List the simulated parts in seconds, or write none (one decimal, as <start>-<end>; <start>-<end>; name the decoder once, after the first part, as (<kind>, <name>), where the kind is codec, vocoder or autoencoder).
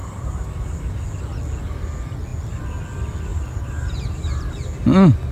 0.0-0.8 (vocoder, BigVGAN v2); 3.3-4.5